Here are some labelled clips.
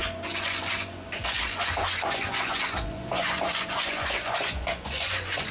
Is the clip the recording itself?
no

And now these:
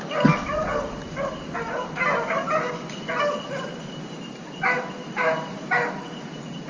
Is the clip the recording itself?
yes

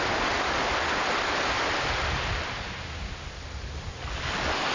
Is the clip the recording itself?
yes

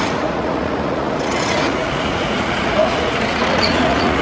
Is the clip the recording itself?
no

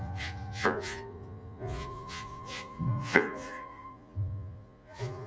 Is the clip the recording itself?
no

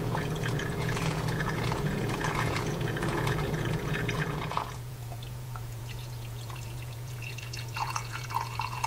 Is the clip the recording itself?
no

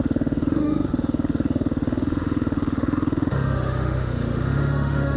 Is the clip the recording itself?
no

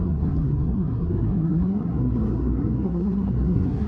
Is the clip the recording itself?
no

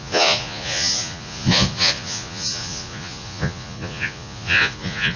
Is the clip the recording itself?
no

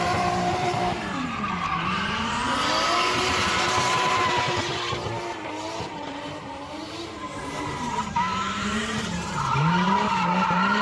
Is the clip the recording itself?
no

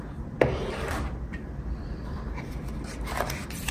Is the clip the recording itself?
no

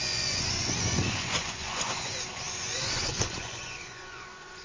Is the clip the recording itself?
no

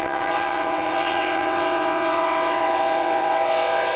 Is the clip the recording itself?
no